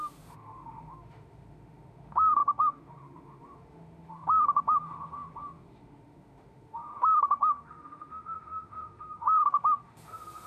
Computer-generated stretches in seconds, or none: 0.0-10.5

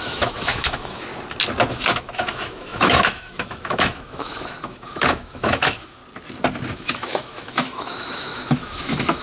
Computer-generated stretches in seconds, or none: 0.0-1.1; 1.7-6.0; 6.7-9.2

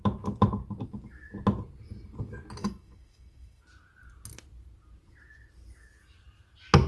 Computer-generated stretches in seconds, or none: 2.6-3.6

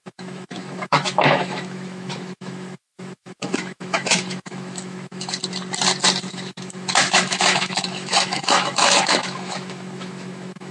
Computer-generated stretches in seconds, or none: 0.0-5.4; 6.3-10.7

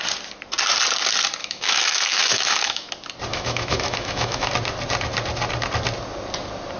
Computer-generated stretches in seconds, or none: 1.4-2.9; 3.3-4.5